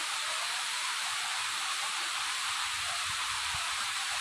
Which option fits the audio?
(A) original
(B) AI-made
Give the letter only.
B